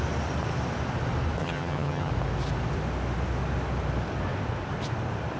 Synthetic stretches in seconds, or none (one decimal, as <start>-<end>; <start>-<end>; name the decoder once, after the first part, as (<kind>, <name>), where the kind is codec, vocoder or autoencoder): 1.4-2.1 (vocoder, HiFi-GAN)